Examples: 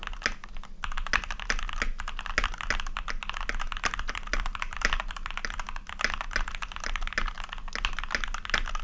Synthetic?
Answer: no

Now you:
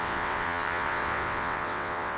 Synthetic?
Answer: yes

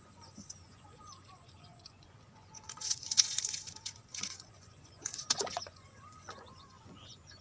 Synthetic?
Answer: yes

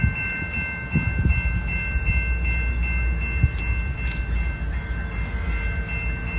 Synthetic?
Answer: no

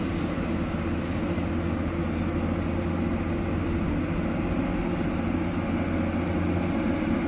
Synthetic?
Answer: no